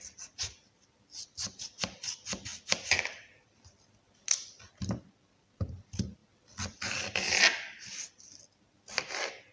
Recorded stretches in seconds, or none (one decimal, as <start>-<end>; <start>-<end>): 0.0-9.5